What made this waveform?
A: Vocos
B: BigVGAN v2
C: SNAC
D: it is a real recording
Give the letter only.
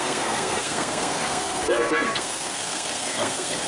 C